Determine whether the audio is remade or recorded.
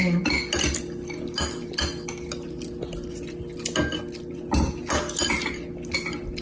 recorded